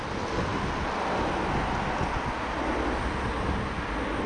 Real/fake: real